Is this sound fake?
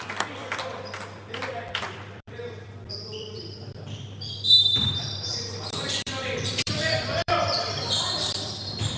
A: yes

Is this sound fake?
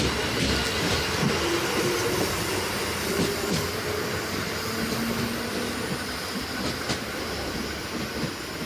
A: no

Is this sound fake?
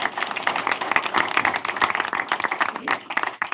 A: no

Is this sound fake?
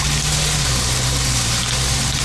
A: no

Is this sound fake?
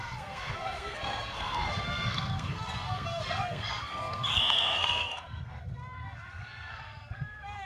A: yes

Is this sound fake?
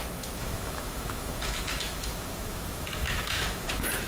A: yes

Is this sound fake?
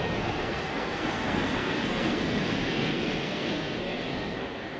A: yes